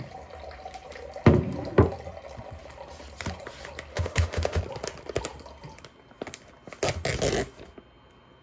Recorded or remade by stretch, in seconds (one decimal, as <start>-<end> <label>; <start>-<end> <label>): 0.0-3.9 recorded; 3.9-4.6 remade; 4.6-8.4 recorded